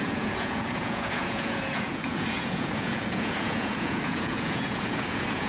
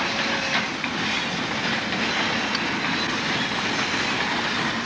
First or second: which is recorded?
second